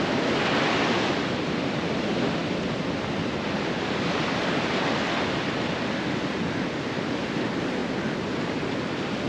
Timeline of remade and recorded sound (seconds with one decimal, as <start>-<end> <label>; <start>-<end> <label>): 0.0-9.3 recorded